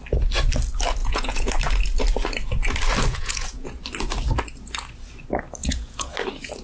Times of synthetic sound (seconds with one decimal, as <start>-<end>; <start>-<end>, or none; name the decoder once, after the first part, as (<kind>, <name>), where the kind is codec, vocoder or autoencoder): 1.0-1.5 (vocoder, Vocos); 3.1-3.7; 5.6-6.1